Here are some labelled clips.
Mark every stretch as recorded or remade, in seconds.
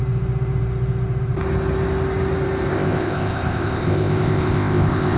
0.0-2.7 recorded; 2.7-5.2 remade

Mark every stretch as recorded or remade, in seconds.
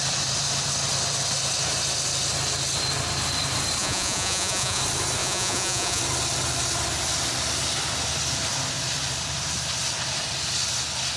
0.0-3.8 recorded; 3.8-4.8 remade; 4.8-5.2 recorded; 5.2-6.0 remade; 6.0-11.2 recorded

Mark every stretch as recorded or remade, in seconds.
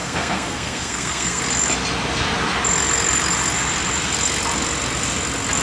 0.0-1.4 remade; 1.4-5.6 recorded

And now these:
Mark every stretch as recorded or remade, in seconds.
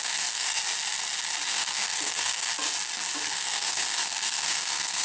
0.0-0.6 remade; 0.6-1.5 recorded; 1.5-2.5 remade; 2.5-3.3 recorded; 3.3-5.0 remade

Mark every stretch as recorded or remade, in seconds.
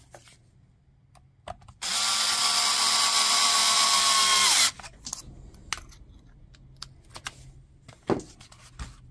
0.0-9.1 recorded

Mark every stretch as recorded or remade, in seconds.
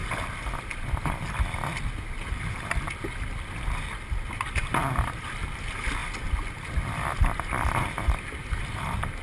0.0-9.2 recorded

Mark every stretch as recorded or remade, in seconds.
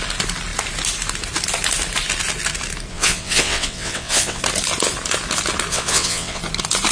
0.0-2.9 recorded; 2.9-4.4 remade; 4.4-5.7 recorded; 5.7-6.4 remade; 6.4-6.9 recorded